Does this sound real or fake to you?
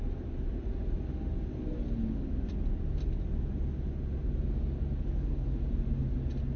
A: real